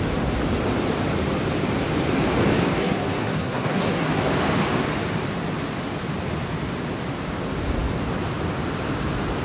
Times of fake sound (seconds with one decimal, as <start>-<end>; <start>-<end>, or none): 2.8-4.1